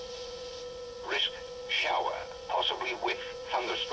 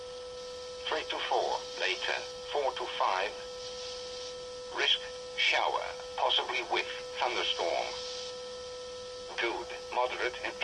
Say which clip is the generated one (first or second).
first